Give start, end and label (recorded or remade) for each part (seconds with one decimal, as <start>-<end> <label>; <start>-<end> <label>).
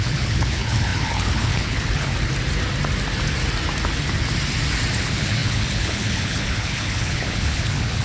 0.0-2.1 remade; 2.1-5.0 recorded; 5.0-8.0 remade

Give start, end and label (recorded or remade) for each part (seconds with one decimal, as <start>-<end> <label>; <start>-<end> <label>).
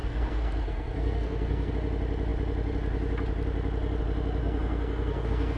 0.0-1.7 remade; 1.7-4.4 recorded; 4.4-5.6 remade